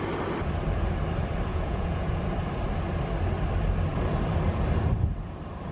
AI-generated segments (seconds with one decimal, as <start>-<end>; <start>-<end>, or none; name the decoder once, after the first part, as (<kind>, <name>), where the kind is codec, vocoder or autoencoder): 1.5-2.2 (vocoder, Vocos)